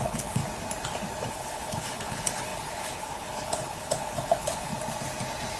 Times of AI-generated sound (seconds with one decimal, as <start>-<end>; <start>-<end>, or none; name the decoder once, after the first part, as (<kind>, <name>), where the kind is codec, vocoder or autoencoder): 0.0-0.4 (codec, HILCodec); 1.3-4.7